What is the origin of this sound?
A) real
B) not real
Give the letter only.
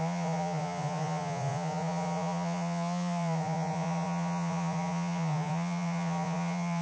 B